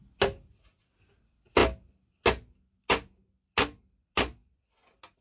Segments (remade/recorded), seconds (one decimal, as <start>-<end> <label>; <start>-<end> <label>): 0.0-5.2 recorded